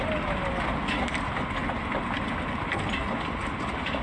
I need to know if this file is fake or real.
real